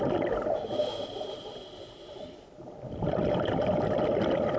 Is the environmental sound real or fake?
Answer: real